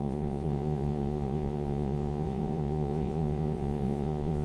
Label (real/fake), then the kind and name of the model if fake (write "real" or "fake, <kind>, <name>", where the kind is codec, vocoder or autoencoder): fake, vocoder, Vocos